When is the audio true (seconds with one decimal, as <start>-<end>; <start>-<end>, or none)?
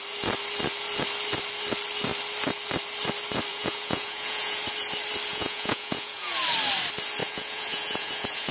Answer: 0.0-3.5; 4.6-5.3; 6.4-7.2